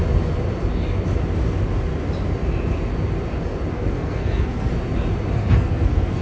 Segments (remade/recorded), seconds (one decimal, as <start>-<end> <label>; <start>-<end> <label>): 0.0-3.7 recorded; 3.7-4.7 remade; 4.7-5.3 recorded; 5.3-6.2 remade